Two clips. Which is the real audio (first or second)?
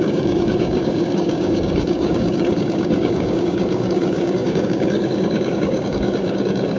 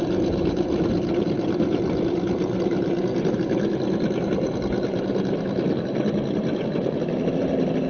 second